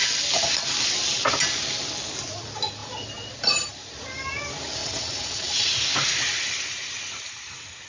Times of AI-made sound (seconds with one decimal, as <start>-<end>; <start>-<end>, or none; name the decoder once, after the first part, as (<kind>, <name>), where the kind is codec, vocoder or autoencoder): 4.8-5.7 (vocoder, WaveNeXt)